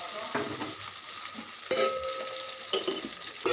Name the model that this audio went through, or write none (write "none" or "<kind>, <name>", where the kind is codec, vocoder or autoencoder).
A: none